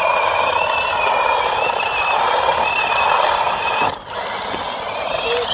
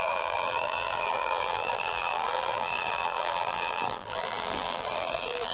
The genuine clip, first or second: first